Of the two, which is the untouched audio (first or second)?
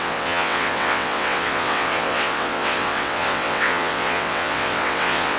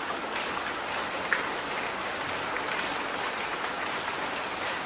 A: second